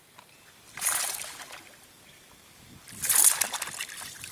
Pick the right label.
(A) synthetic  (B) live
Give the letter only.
B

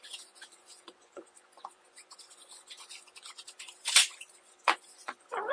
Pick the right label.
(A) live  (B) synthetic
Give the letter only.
B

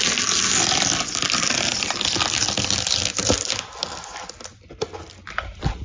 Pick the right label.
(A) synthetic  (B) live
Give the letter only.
B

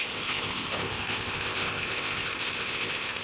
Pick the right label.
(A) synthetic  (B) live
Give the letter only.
A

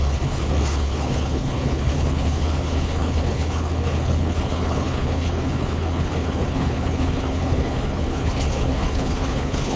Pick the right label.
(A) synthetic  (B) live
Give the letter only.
A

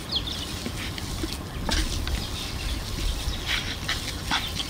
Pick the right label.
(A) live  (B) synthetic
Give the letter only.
A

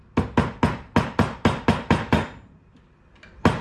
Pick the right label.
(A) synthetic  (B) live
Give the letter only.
B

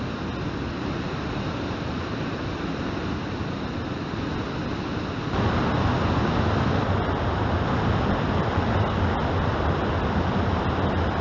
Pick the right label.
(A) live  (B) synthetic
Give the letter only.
A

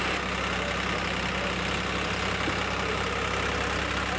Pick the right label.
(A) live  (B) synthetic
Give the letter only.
A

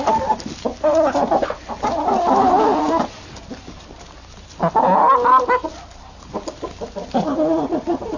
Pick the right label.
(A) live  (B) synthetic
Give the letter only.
A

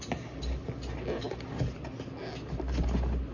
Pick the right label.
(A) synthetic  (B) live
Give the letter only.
B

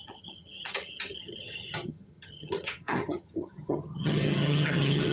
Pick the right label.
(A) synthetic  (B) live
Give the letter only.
A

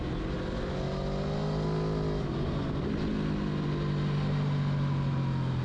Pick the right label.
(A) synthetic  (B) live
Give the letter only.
B